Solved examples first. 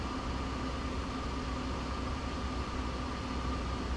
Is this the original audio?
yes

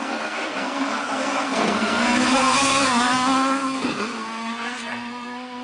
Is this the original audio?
no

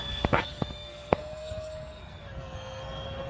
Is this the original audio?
no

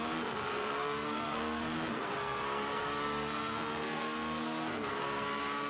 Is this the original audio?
no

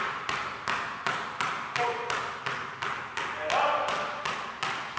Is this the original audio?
yes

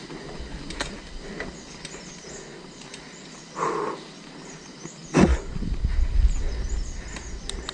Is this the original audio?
yes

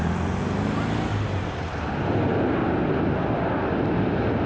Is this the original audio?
yes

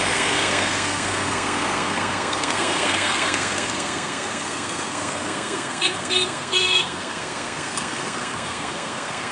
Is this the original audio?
no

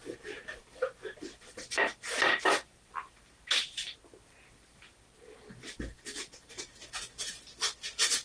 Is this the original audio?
yes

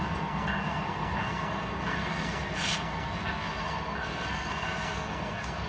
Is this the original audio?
no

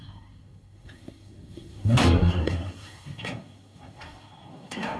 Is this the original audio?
no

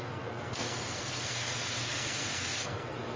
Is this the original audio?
no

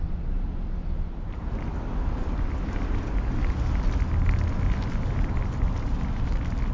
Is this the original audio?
yes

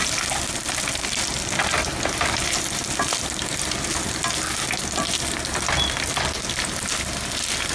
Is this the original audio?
yes